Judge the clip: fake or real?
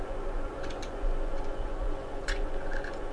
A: fake